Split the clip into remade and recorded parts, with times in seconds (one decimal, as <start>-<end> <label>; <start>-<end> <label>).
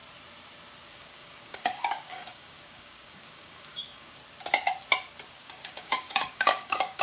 0.0-0.9 recorded; 0.9-4.2 remade; 4.2-5.3 recorded; 5.3-7.0 remade